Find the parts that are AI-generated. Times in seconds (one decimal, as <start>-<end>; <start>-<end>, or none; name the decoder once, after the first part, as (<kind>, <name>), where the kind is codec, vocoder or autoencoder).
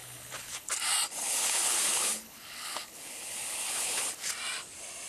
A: 0.0-0.7 (codec, HILCodec); 1.2-4.3